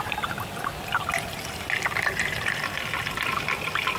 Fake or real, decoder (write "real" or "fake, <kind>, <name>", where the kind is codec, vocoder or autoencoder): real